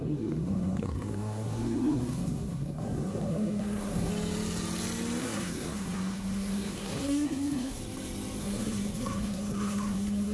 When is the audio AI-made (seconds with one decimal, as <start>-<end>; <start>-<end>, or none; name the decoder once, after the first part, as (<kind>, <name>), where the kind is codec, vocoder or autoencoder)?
0.0-4.1 (codec, SNAC); 5.2-7.8; 8.4-10.3

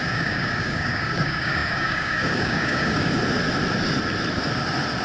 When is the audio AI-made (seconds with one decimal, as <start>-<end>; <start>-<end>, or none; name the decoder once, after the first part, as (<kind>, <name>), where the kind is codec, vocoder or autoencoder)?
0.0-3.2 (codec, DAC)